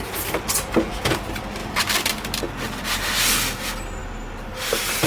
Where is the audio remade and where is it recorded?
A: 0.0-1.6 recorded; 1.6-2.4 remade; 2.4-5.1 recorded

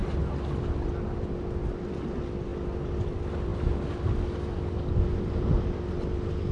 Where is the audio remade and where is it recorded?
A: 0.0-6.5 recorded

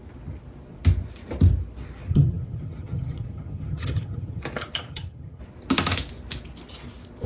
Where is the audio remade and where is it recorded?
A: 0.0-2.1 recorded; 2.1-4.4 remade; 4.4-4.9 recorded; 4.9-5.4 remade; 5.4-7.3 recorded

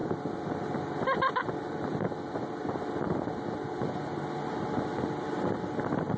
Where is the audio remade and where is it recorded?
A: 0.0-6.2 recorded

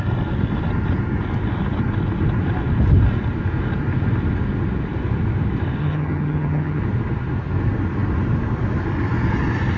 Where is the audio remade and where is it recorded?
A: 0.0-5.8 recorded; 5.8-6.8 remade; 6.8-9.8 recorded